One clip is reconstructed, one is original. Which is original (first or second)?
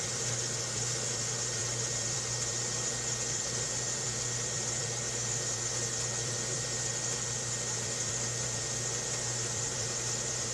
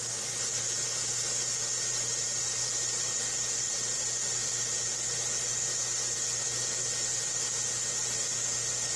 second